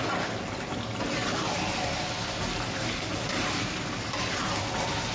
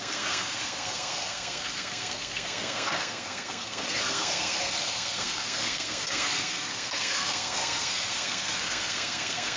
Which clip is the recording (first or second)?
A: first